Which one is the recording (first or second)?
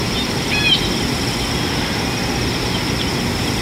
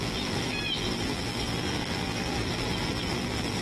first